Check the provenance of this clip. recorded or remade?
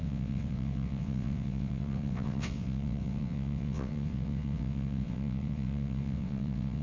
remade